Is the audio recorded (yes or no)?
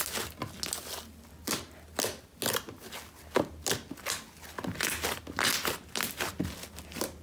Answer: yes